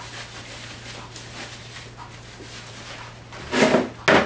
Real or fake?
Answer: real